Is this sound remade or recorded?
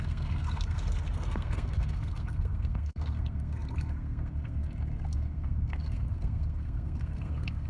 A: remade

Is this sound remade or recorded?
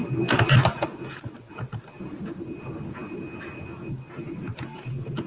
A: recorded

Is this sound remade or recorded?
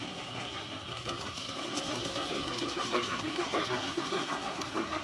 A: remade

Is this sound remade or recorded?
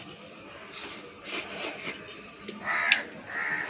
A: recorded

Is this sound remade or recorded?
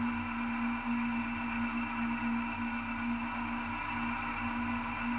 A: recorded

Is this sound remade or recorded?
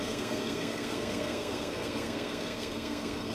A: remade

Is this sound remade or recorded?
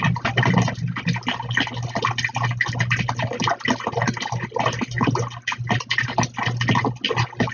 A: recorded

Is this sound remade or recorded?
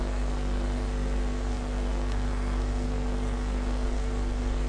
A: remade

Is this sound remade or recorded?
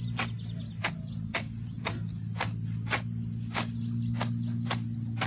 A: recorded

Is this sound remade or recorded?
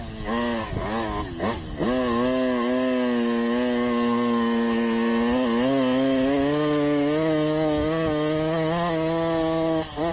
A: recorded